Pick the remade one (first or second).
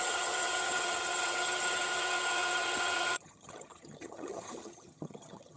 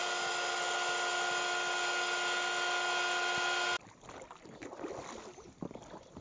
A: first